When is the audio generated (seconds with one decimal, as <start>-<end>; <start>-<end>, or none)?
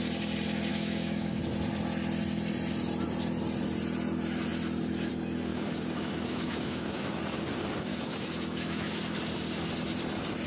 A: 0.7-1.4; 5.5-7.2; 7.9-9.0